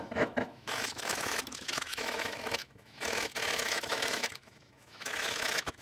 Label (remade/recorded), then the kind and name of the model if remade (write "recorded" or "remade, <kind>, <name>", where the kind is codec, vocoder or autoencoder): remade, autoencoder, DAC-VAE